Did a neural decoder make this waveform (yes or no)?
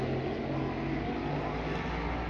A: no